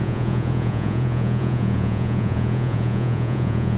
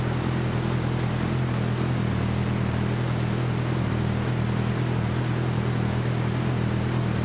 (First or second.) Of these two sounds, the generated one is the first